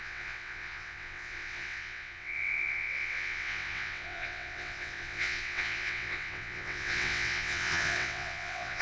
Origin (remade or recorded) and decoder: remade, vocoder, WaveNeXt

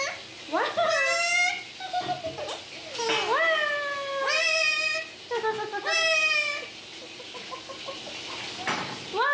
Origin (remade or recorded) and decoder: recorded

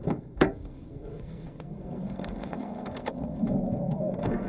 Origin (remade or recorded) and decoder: remade, codec, SNAC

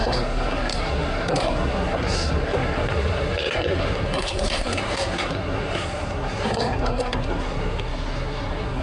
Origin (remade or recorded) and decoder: remade, codec, SNAC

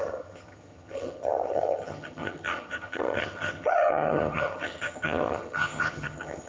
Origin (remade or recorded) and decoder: remade, vocoder, HiFi-GAN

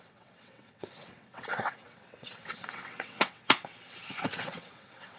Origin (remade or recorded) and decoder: remade, vocoder, WaveNeXt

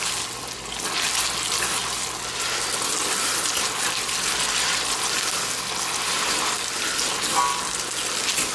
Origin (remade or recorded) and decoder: recorded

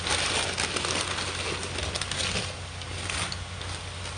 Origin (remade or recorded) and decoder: recorded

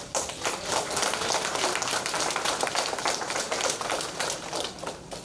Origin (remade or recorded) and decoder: recorded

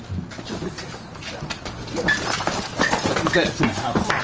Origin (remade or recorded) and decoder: recorded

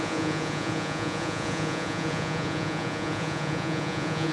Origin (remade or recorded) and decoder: remade, vocoder, Vocos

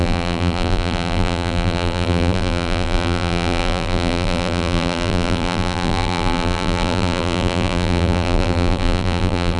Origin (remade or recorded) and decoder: remade, vocoder, BigVGAN v2